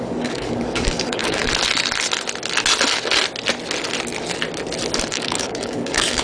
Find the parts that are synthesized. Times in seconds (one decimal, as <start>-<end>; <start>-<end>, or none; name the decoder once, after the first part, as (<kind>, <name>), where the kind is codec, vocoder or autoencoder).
0.0-1.4 (codec, DAC); 5.1-6.2